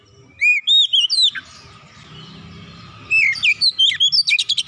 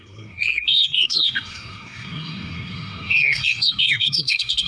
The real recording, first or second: first